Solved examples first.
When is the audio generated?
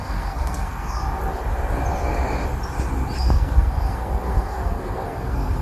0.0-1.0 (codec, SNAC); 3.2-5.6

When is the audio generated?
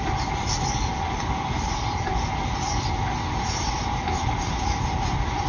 none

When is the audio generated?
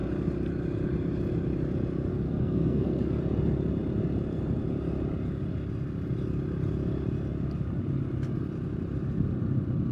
2.1-3.2 (codec, SNAC)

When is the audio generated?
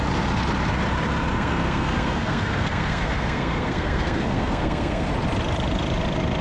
1.3-5.1 (codec, SNAC)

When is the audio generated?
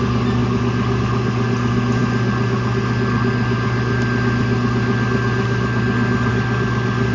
none